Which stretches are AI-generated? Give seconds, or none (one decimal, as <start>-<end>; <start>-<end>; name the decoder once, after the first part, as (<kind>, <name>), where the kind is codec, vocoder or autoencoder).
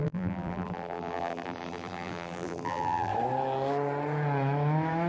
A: 0.0-3.1 (vocoder, BigVGAN v2)